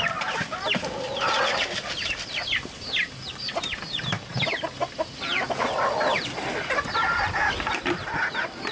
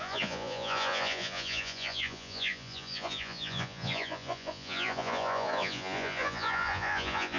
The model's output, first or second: second